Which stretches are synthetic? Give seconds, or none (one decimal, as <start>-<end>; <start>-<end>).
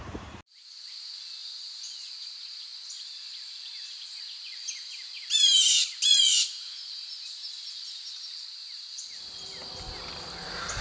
6.1-6.8